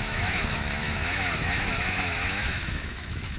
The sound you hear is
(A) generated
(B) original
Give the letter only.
A